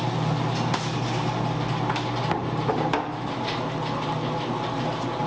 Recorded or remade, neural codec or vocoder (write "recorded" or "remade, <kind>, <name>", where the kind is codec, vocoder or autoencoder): recorded